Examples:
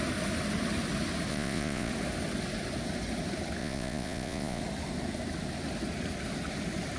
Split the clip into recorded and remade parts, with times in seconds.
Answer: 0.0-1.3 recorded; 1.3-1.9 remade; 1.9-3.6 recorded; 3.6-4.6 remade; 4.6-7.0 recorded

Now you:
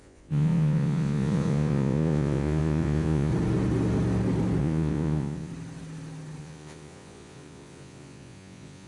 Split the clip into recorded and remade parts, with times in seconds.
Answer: 0.0-3.3 remade; 3.3-4.6 recorded; 4.6-5.5 remade; 5.5-6.4 recorded; 6.4-8.9 remade

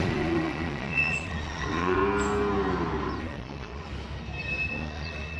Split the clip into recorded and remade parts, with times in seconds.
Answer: 0.0-2.0 remade; 2.0-3.2 recorded; 3.2-3.9 remade; 3.9-4.7 recorded; 4.7-5.4 remade

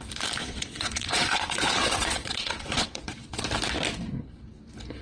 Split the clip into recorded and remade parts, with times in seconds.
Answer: 0.0-0.4 recorded; 0.4-3.4 remade; 3.4-5.0 recorded

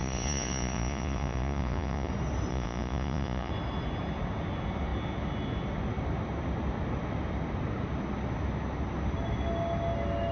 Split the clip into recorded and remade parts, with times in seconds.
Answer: 0.0-2.1 remade; 2.1-2.5 recorded; 2.5-3.5 remade; 3.5-10.3 recorded